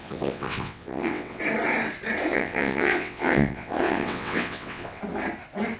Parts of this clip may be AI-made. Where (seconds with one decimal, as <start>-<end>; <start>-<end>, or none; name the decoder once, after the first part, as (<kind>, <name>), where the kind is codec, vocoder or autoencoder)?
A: 0.0-1.4 (vocoder, WaveNeXt); 2.3-5.0